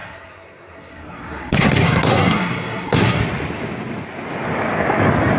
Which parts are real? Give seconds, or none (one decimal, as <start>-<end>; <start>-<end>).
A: 3.2-5.4